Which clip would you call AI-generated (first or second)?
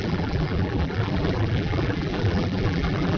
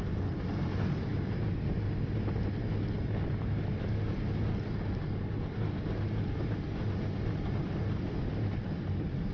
first